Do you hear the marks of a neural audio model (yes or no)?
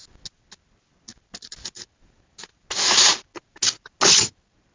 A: no